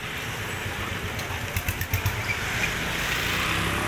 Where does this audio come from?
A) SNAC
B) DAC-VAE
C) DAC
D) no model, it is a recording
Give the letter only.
D